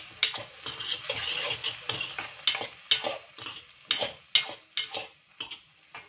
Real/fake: real